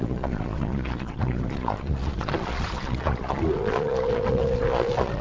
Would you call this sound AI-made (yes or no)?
yes